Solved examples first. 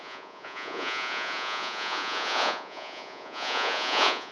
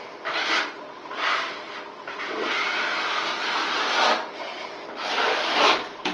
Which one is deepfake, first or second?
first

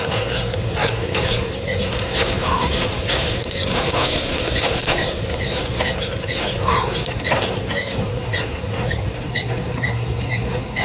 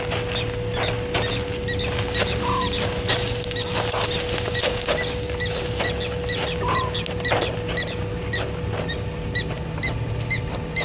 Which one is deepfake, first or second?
first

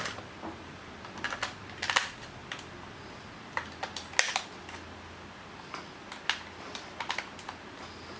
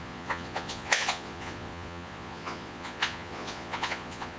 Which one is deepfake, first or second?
second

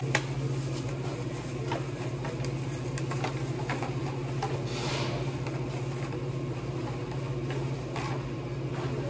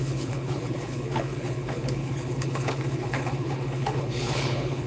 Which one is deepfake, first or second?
second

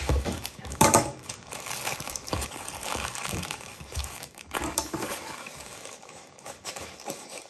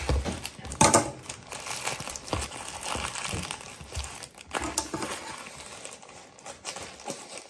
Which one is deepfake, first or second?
first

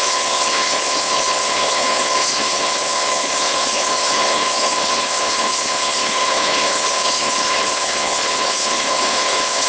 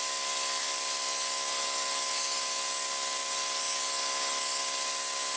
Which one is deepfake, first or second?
first